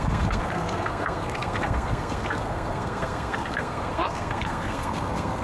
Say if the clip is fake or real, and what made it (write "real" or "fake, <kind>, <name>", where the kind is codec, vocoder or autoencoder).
fake, codec, SNAC